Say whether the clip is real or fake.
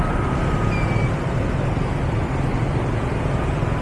real